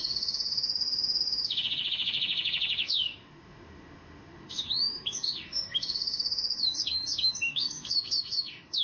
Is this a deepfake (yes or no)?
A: yes